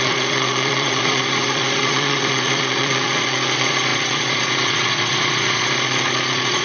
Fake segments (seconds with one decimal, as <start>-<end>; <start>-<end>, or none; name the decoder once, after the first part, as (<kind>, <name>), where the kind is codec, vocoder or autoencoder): 0.0-6.6 (vocoder, Vocos)